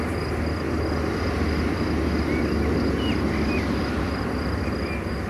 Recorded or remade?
recorded